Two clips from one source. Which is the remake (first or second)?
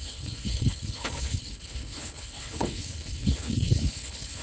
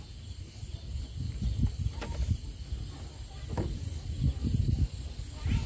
first